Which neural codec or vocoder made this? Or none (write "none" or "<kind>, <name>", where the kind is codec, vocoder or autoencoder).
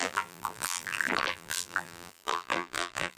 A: vocoder, BigVGAN v2